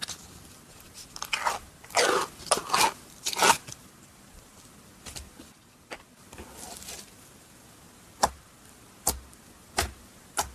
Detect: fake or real real